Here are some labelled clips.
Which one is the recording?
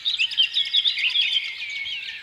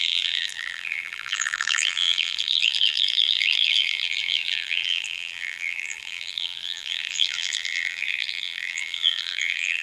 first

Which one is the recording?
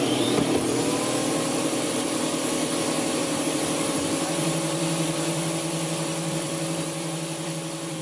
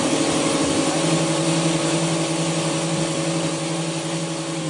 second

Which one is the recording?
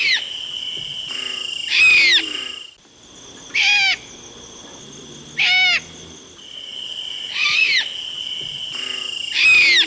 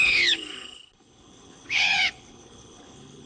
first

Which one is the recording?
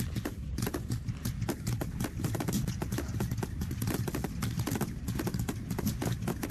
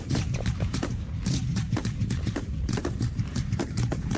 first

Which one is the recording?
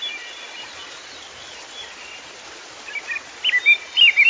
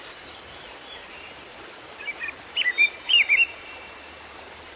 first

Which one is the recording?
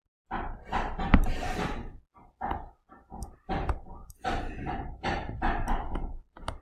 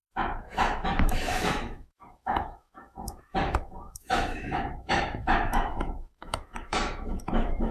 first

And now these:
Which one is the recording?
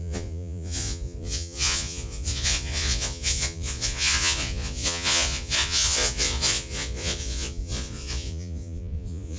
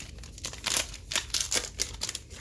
second